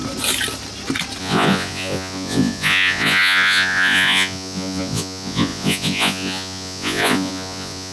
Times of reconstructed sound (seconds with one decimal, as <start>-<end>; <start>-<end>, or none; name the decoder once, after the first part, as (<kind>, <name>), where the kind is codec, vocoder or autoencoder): 1.2-7.9 (vocoder, Vocos)